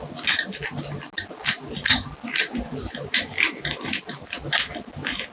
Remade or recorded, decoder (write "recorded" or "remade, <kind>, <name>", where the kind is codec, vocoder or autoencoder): recorded